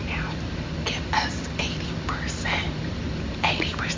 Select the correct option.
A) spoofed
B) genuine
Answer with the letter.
B